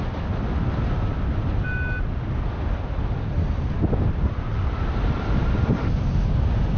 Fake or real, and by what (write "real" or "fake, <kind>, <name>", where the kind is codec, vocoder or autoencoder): real